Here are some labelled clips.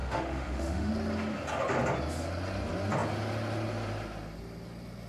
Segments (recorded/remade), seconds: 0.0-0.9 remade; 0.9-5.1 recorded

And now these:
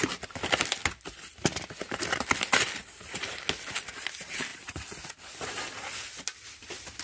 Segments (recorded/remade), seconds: 0.0-7.0 recorded

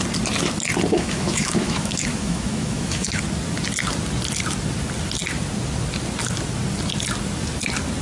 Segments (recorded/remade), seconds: 0.0-0.9 recorded; 0.9-3.2 remade; 3.2-8.0 recorded

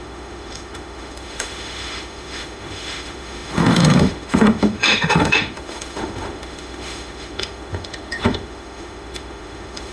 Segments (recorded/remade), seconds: 0.0-9.9 remade

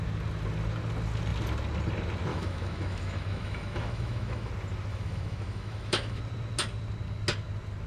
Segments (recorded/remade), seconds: 0.0-2.3 recorded; 2.3-4.5 remade; 4.5-4.9 recorded; 4.9-6.2 remade; 6.2-7.9 recorded

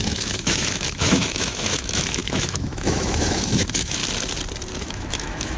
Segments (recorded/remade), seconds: 0.0-4.0 remade; 4.0-4.7 recorded; 4.7-5.6 remade

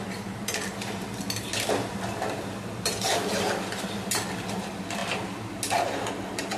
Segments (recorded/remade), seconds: 0.0-6.6 recorded